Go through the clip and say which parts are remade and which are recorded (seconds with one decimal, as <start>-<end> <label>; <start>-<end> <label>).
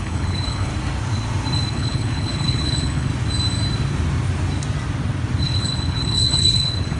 0.0-0.7 remade; 0.7-1.7 recorded; 1.7-3.1 remade; 3.1-5.4 recorded; 5.4-7.0 remade